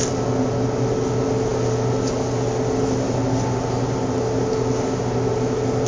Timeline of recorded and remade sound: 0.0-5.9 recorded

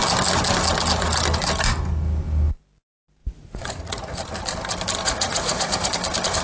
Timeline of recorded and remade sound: 0.0-3.2 recorded; 3.2-4.2 remade; 4.2-5.0 recorded; 5.0-5.9 remade; 5.9-6.4 recorded

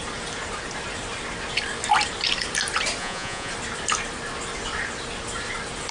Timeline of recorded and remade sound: 0.0-3.0 recorded; 3.0-3.5 remade; 3.5-5.9 recorded

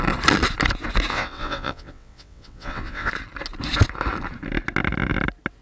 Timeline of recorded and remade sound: 0.0-1.1 recorded; 1.1-3.1 remade; 3.1-5.6 recorded

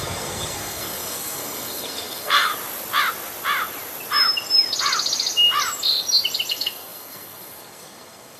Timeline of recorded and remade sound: 0.0-2.5 remade; 2.5-6.5 recorded; 6.5-8.4 remade

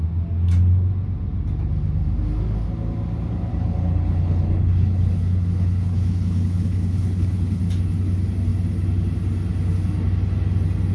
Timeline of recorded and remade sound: 0.0-3.5 recorded; 3.5-7.6 remade; 7.6-10.9 recorded

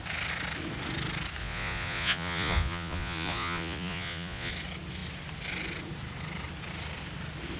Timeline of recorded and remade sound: 0.0-1.4 recorded; 1.4-4.5 remade; 4.5-7.6 recorded